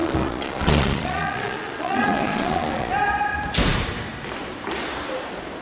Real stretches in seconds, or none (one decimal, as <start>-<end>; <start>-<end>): 2.9-5.6